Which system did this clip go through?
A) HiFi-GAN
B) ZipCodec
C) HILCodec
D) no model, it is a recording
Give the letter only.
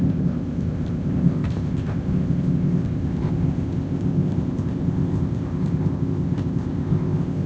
B